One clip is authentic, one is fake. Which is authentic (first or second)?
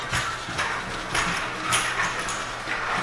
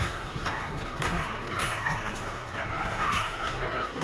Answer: first